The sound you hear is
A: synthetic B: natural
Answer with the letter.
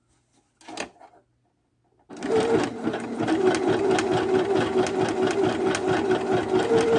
B